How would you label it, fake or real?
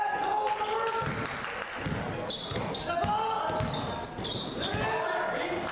real